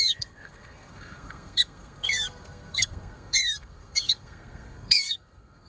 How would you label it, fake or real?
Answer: fake